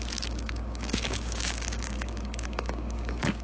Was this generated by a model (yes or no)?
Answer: yes